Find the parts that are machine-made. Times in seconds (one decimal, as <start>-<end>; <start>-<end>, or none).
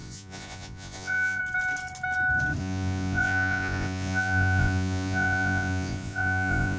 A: 0.0-1.4; 2.6-6.8